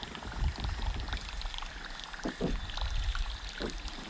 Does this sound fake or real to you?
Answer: real